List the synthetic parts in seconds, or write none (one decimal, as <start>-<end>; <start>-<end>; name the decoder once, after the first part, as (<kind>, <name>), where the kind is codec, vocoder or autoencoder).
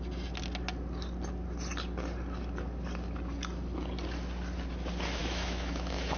5.2-6.2 (autoencoder, DAC-VAE)